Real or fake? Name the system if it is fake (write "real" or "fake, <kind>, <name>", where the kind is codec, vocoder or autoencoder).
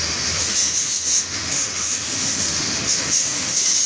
fake, autoencoder, DAC-VAE